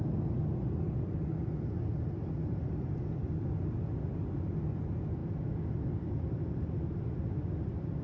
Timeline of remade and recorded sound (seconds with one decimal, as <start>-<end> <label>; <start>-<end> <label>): 0.0-8.0 recorded